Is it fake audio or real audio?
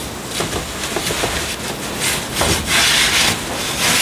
real